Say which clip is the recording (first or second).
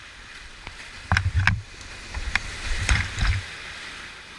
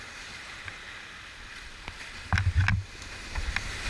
second